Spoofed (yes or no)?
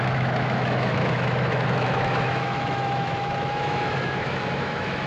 yes